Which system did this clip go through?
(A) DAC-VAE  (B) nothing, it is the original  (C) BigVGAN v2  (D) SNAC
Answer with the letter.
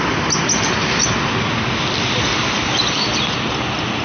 B